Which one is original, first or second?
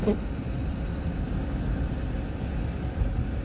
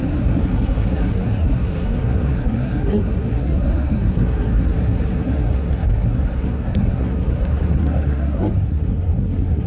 first